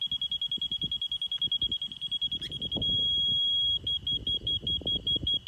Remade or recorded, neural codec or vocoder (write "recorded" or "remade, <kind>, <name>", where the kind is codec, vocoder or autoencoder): recorded